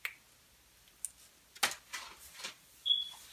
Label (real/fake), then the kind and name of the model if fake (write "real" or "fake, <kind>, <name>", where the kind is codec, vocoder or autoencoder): real